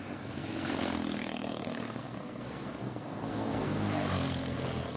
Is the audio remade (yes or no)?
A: yes